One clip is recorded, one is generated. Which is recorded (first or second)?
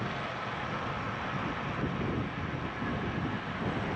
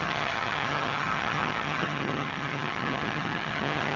first